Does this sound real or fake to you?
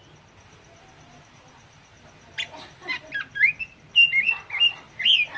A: real